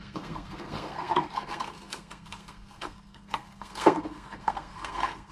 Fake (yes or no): yes